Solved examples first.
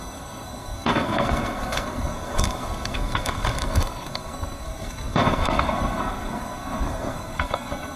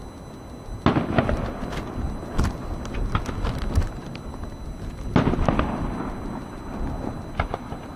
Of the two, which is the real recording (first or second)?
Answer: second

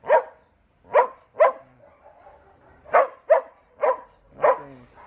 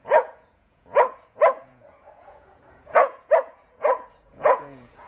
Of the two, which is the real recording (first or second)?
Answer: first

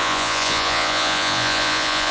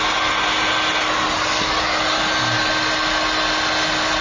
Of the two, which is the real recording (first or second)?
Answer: second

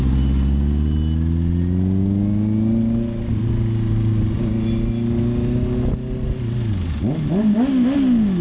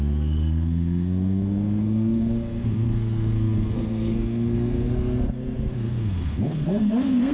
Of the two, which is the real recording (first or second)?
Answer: first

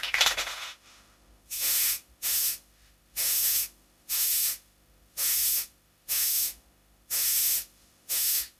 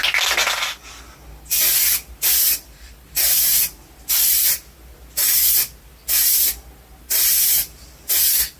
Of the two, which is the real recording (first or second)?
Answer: second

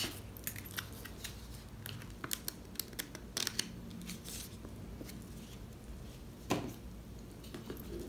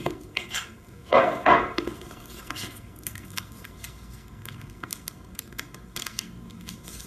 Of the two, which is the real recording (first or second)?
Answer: first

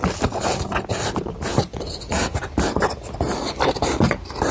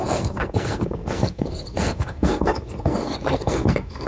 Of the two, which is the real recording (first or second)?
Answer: first